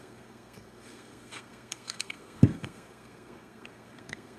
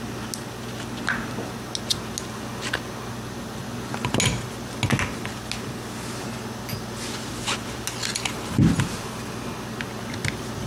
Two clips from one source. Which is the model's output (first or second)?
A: first